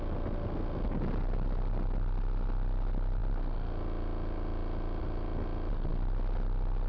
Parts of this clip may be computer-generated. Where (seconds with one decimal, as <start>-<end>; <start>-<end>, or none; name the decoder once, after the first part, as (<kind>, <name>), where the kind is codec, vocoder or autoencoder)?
none